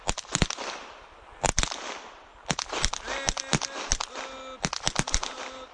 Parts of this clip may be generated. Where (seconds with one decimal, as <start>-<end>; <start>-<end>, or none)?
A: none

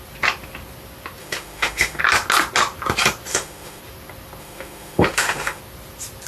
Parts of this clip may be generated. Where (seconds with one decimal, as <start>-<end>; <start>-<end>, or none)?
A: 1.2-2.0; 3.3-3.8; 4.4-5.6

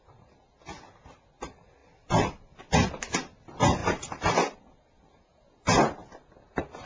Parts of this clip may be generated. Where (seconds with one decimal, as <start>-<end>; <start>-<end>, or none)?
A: 1.8-2.6; 3.8-5.4

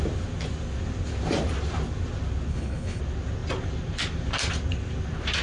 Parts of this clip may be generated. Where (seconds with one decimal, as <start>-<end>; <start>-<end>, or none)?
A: 2.5-3.0

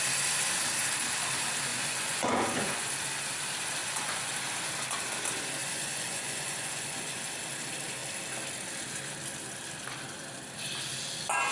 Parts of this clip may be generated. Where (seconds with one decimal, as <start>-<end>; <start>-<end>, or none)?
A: 1.7-2.9; 3.8-4.3; 5.6-7.2